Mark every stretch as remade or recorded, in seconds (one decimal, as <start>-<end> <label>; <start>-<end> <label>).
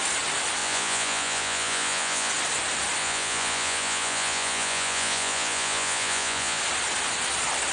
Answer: 0.0-0.6 recorded; 0.6-2.3 remade; 2.3-3.0 recorded; 3.0-6.6 remade; 6.6-7.7 recorded